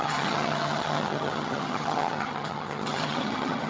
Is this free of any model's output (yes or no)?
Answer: no